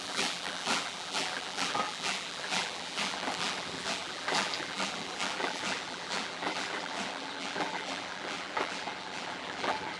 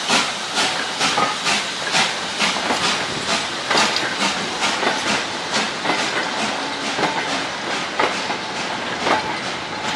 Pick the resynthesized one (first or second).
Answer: first